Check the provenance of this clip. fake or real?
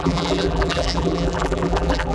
fake